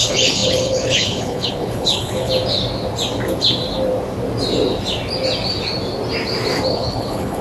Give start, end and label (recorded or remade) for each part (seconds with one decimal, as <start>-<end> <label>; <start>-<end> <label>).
0.0-2.3 remade; 2.3-6.7 recorded; 6.7-7.4 remade